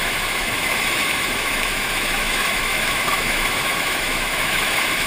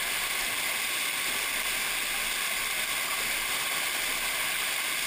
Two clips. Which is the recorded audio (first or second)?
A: second